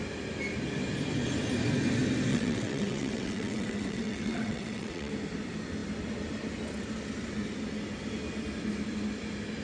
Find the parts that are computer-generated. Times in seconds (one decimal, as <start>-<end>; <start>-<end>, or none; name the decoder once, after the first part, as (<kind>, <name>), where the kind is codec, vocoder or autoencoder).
2.3-5.1 (vocoder, WaveNeXt)

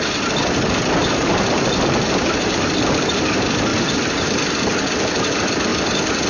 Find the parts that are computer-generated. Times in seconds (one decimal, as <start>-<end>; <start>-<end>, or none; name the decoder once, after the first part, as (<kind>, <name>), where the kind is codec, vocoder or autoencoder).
1.0-3.1 (vocoder, BigVGAN v2); 3.7-4.9

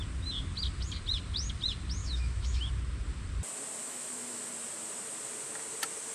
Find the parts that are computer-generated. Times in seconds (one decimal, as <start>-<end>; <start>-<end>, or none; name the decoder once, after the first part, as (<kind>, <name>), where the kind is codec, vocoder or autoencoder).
2.0-2.7 (autoencoder, DAC-VAE); 3.8-4.5